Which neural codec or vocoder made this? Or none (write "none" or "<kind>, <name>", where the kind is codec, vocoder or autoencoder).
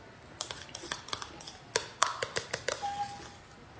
none